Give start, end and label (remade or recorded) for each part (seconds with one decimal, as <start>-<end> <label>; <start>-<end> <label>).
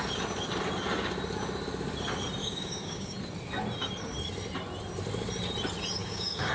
0.0-2.4 recorded; 2.4-3.2 remade; 3.2-6.0 recorded; 6.0-6.5 remade